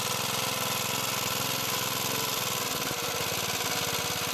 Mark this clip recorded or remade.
recorded